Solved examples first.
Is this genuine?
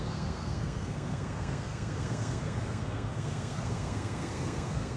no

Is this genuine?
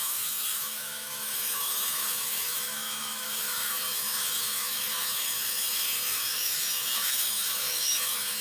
no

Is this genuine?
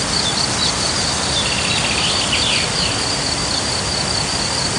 yes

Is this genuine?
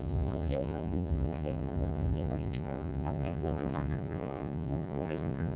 no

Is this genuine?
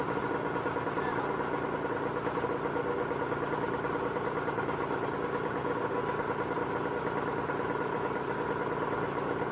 yes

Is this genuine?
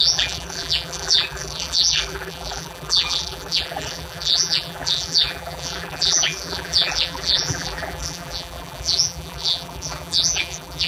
no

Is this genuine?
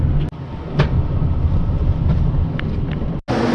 yes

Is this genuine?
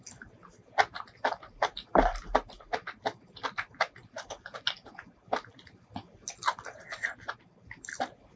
yes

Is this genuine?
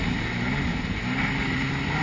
yes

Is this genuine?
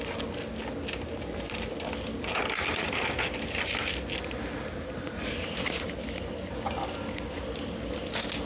yes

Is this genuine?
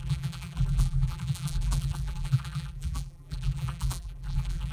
no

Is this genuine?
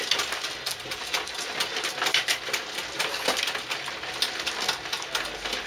yes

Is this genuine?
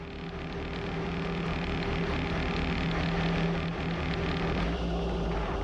yes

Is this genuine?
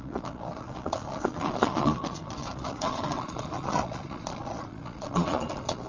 no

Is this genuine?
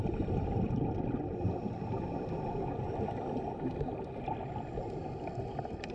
yes